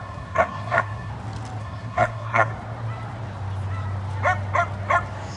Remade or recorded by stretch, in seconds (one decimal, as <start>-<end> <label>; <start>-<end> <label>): 0.0-1.1 remade; 1.1-1.6 recorded; 1.6-2.5 remade; 2.5-5.4 recorded